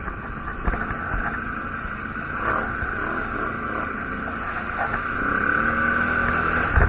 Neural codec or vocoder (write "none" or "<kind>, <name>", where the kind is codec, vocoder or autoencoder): none